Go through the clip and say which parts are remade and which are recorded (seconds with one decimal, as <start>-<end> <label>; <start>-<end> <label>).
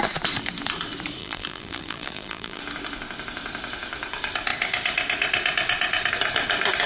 0.0-1.2 recorded; 1.2-2.6 remade; 2.6-6.9 recorded